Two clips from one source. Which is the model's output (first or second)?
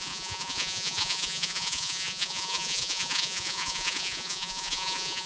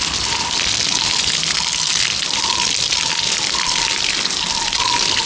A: first